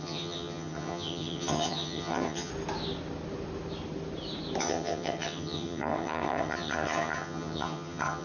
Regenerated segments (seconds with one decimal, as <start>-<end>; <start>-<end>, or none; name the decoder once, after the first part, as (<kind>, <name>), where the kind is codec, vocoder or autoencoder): 0.0-2.5 (vocoder, HiFi-GAN); 4.6-8.2